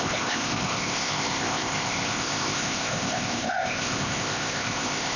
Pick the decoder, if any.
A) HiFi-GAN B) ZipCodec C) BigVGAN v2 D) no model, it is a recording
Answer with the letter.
B